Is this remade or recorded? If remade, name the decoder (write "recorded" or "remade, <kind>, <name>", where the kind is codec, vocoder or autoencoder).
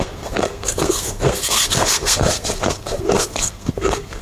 remade, codec, SNAC